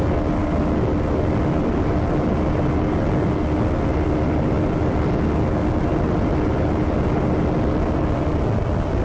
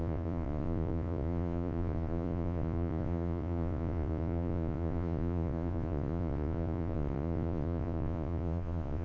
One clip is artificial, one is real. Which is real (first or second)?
first